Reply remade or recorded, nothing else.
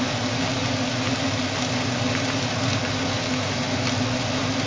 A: recorded